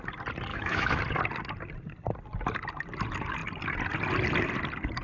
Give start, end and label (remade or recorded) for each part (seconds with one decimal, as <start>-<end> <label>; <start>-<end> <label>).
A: 0.0-0.5 recorded; 0.5-1.0 remade; 1.0-5.0 recorded